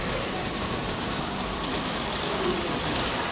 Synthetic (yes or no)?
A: yes